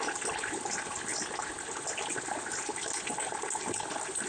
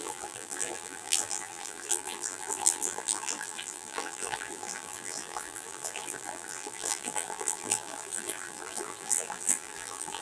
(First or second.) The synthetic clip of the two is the second